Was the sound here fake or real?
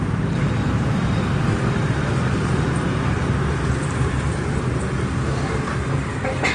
fake